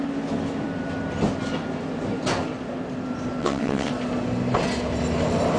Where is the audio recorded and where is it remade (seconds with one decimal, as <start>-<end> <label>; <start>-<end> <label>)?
0.0-3.4 recorded; 3.4-3.9 remade; 3.9-5.6 recorded

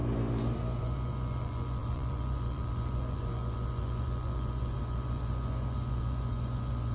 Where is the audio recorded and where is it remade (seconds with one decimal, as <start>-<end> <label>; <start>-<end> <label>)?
0.0-0.8 recorded; 0.8-6.9 remade

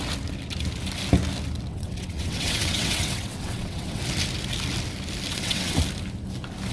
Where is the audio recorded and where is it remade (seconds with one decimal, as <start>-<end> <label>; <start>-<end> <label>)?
0.0-1.7 recorded; 1.7-4.0 remade; 4.0-5.3 recorded; 5.3-5.8 remade; 5.8-6.7 recorded

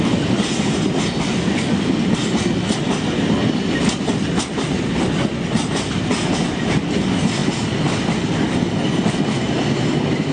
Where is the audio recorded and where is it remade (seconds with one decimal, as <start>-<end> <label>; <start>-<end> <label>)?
0.0-10.3 recorded

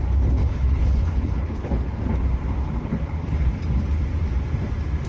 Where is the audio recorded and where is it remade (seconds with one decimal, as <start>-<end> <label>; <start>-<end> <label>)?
0.0-0.4 recorded; 0.4-1.9 remade; 1.9-2.9 recorded; 2.9-3.5 remade; 3.5-5.1 recorded